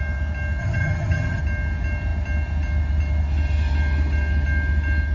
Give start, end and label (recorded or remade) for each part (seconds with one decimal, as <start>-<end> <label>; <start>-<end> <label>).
0.0-0.6 recorded; 0.6-1.4 remade; 1.4-5.1 recorded